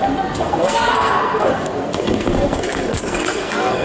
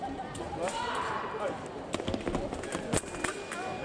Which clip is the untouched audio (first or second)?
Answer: second